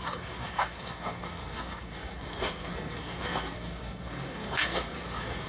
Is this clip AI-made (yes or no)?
yes